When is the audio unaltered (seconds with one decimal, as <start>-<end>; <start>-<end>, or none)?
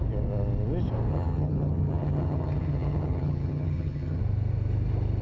0.0-1.1; 4.2-5.2